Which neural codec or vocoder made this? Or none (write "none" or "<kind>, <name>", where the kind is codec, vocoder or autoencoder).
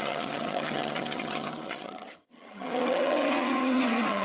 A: vocoder, HiFi-GAN